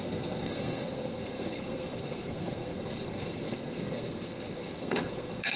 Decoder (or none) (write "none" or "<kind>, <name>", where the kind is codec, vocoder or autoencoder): codec, SNAC